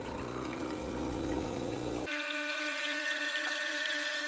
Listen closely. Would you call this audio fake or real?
fake